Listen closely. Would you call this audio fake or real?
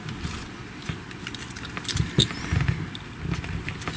real